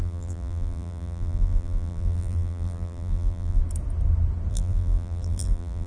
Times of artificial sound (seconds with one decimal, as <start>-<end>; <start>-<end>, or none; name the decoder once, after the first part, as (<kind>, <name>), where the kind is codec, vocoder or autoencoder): 0.0-3.6 (vocoder, BigVGAN v2); 4.5-5.9